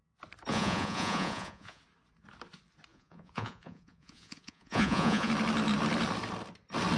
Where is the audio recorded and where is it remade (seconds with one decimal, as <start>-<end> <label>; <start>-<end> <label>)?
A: 0.0-0.5 recorded; 0.5-1.8 remade; 1.8-2.9 recorded; 2.9-5.3 remade; 5.3-7.0 recorded